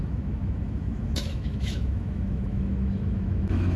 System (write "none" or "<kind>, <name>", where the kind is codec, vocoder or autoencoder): autoencoder, DAC-VAE